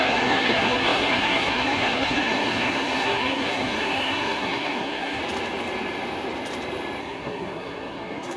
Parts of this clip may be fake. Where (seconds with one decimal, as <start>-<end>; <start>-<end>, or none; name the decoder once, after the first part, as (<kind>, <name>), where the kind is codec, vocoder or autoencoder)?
0.0-5.2 (codec, SNAC); 7.0-8.4